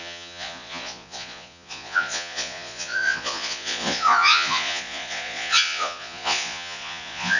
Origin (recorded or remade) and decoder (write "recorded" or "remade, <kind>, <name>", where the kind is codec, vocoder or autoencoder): remade, vocoder, Vocos